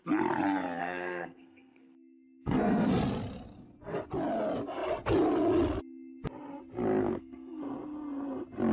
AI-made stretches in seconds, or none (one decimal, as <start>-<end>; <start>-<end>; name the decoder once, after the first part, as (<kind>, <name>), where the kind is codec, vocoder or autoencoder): 0.8-2.9 (codec, SNAC); 7.0-7.6